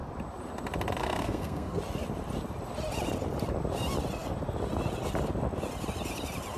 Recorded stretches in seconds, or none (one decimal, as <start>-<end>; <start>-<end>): 0.0-1.0; 1.8-6.6